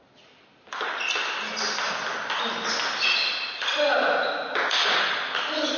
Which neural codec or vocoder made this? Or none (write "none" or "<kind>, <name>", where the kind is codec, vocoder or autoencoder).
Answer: none